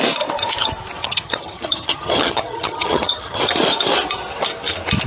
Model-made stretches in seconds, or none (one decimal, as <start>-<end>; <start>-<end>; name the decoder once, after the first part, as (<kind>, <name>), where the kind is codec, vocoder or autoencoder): 1.0-3.4 (vocoder, HiFi-GAN)